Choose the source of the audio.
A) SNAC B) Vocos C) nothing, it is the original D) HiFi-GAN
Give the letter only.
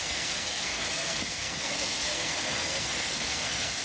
A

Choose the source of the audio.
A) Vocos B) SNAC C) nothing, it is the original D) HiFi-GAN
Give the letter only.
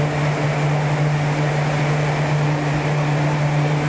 C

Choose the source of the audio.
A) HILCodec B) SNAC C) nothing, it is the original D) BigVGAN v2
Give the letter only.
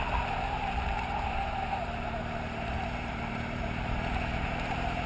D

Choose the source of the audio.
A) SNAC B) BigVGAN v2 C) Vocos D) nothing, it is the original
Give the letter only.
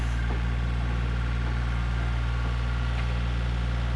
D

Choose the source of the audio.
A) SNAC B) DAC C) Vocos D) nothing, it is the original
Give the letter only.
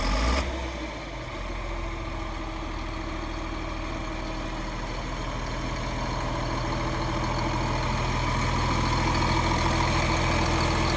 D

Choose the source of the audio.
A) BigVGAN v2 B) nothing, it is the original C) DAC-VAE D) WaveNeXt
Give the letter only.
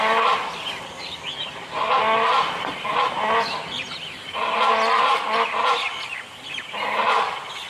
B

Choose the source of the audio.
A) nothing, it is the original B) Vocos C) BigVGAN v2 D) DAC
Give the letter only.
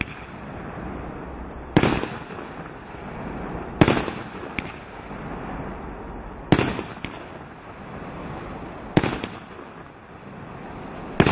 A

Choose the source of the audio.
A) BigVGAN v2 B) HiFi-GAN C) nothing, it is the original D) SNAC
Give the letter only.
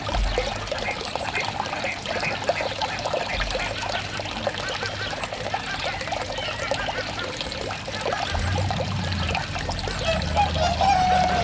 C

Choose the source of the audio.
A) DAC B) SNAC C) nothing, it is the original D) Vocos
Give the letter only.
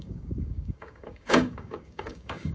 A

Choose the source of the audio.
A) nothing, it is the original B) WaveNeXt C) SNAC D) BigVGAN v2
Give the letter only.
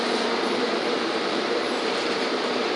D